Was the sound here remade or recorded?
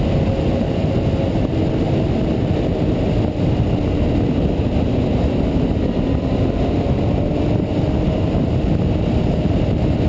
recorded